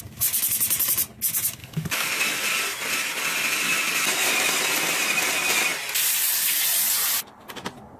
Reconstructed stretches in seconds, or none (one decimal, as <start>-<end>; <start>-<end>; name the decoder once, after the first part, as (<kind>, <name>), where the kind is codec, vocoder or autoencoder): 1.6-2.1 (codec, DAC)